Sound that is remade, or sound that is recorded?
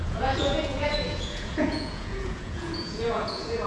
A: remade